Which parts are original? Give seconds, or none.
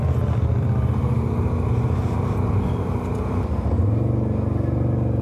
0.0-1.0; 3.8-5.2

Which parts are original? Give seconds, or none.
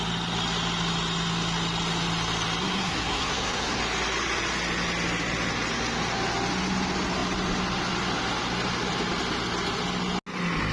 0.0-2.6; 3.8-10.7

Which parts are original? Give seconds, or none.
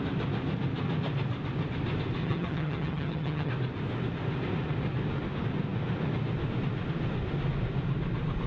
0.0-2.2; 3.5-8.5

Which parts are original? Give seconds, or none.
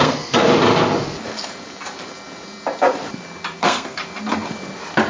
0.5-3.6; 4.0-5.1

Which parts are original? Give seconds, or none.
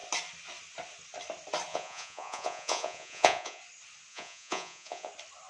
0.0-1.7; 3.6-4.1; 5.1-5.5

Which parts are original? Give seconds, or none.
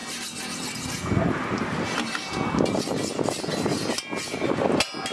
0.0-5.1